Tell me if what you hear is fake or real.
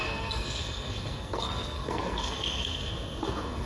fake